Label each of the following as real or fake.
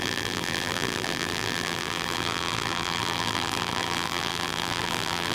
fake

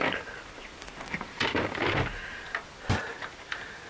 fake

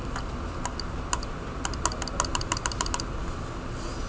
real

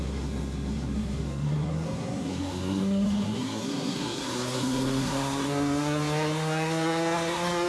fake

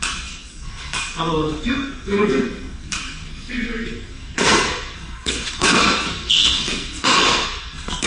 fake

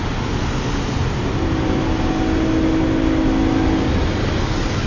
real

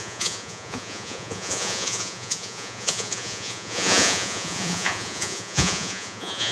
fake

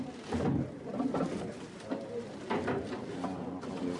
real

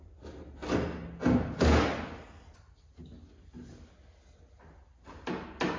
real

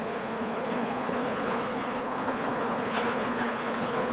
fake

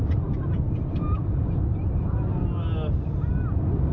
real